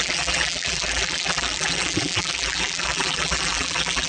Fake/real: fake